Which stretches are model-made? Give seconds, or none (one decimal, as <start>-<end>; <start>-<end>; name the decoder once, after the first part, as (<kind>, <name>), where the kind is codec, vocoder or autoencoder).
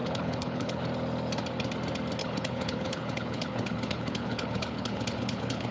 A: 0.0-0.8 (codec, HILCodec); 2.2-5.7